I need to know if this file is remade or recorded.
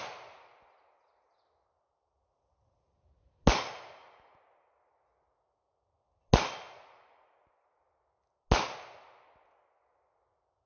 recorded